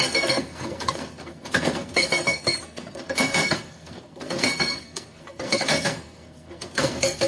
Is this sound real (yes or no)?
no